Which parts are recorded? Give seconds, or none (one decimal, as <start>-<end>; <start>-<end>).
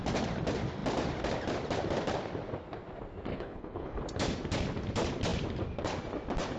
0.0-3.3; 4.0-6.6